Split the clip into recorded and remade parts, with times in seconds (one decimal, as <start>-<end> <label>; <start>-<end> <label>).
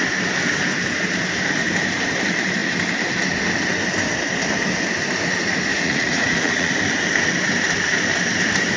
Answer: 0.0-5.7 recorded; 5.7-6.7 remade; 6.7-8.8 recorded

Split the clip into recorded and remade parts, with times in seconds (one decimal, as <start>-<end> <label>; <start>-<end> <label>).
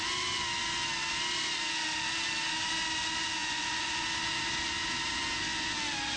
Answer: 0.0-3.4 recorded; 3.4-4.0 remade; 4.0-6.2 recorded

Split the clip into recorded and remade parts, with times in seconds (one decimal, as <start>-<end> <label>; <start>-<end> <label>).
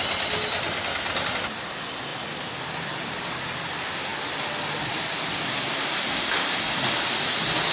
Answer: 0.0-7.7 recorded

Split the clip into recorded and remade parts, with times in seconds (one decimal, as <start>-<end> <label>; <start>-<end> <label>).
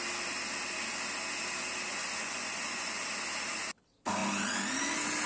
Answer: 0.0-1.9 recorded; 1.9-3.0 remade; 3.0-5.3 recorded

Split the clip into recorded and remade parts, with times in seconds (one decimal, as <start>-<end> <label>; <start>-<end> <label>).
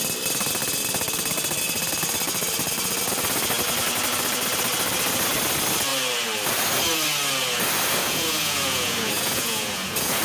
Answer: 0.0-8.0 recorded; 8.0-10.2 remade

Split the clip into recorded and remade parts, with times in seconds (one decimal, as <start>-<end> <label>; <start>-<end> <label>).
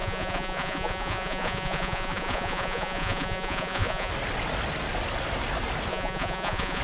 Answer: 0.0-4.1 remade; 4.1-5.9 recorded; 5.9-6.8 remade